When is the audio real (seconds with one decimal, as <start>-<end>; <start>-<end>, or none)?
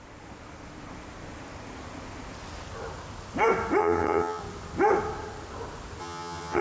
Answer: 0.0-3.8; 4.4-6.0